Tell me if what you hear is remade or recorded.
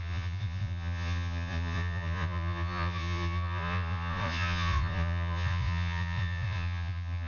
remade